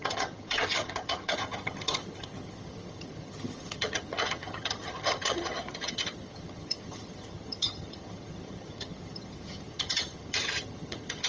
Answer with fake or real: fake